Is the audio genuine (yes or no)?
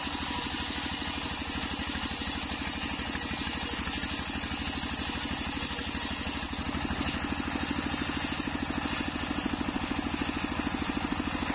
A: yes